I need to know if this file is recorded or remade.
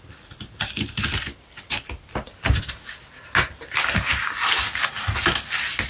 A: recorded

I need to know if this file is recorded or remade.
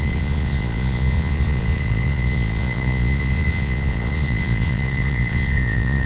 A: remade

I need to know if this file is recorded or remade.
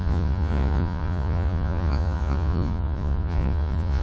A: remade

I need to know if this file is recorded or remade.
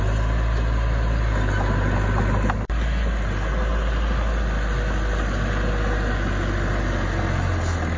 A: recorded